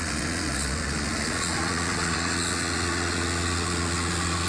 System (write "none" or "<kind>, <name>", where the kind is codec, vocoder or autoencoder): vocoder, Vocos